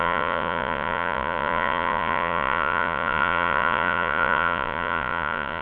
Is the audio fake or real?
fake